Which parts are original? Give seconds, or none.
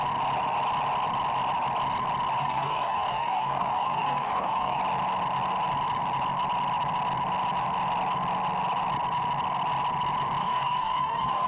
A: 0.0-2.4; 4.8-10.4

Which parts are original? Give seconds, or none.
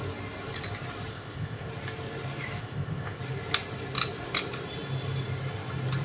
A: 0.0-1.1; 1.7-2.6; 3.2-6.0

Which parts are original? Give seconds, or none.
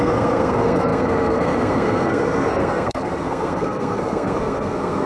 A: none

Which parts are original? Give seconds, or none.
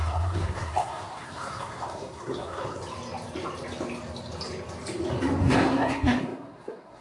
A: 2.8-5.4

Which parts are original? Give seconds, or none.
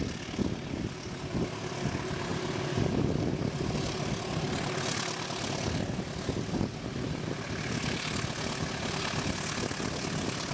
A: 0.0-10.5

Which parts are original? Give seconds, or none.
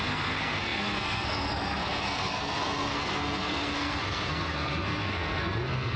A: none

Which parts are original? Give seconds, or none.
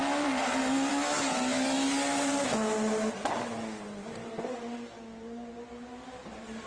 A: 0.0-6.7